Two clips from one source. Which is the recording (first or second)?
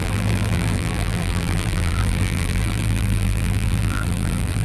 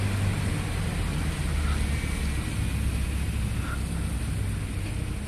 second